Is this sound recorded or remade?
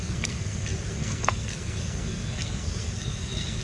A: remade